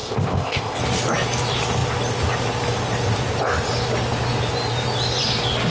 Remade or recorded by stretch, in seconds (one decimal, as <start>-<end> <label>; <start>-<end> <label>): 0.0-0.8 remade; 0.8-5.7 recorded